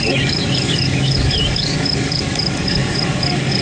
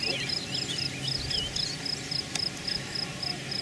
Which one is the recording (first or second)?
second